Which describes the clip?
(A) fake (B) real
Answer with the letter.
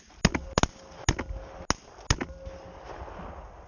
B